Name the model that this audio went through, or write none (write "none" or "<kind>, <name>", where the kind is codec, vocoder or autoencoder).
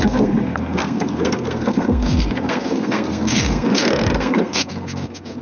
codec, SNAC